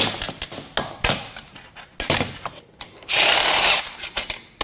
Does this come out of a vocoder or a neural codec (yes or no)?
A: no